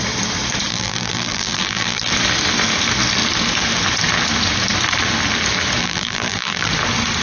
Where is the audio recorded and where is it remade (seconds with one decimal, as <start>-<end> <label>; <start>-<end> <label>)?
0.0-0.7 recorded; 0.7-2.1 remade; 2.1-5.8 recorded; 5.8-6.7 remade; 6.7-7.2 recorded